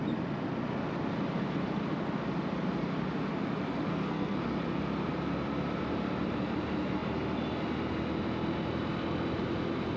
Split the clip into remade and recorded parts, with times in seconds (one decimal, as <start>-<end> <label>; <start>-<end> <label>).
0.0-3.9 recorded; 3.9-4.4 remade; 4.4-10.0 recorded